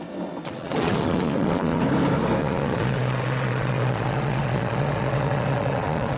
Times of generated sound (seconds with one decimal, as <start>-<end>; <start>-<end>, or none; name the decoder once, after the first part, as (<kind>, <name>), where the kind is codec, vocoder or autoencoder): 0.4-1.8 (vocoder, Vocos); 2.4-6.2